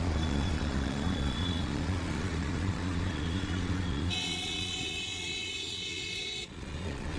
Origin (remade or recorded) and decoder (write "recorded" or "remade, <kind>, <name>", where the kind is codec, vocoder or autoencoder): remade, vocoder, Vocos